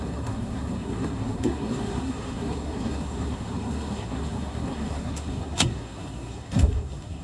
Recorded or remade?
remade